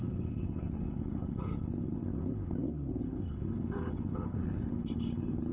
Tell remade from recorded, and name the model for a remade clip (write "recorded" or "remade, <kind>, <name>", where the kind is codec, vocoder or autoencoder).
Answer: remade, codec, HILCodec